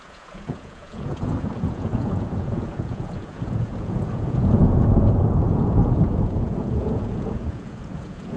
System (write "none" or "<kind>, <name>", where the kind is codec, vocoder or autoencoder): vocoder, Vocos